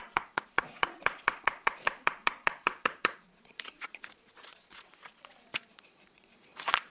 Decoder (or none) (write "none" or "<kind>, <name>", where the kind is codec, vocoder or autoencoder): vocoder, Vocos